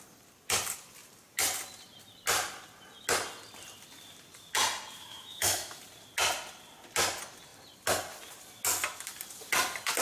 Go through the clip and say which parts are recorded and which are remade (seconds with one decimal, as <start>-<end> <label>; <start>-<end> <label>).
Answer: 0.0-5.0 recorded; 5.0-5.8 remade; 5.8-10.0 recorded